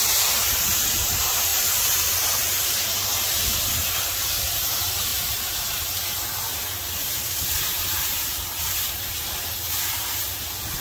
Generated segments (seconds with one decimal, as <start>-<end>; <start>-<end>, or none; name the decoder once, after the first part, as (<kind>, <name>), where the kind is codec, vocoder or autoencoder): 0.0-10.8 (vocoder, BigVGAN v2)